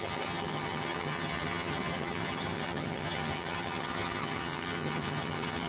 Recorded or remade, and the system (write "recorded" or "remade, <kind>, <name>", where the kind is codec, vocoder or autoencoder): remade, vocoder, HiFi-GAN